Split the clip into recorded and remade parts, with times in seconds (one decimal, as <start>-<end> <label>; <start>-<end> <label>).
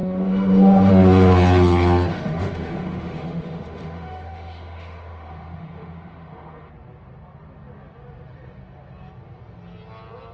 0.0-0.9 remade; 0.9-2.1 recorded; 2.1-6.7 remade; 6.7-10.3 recorded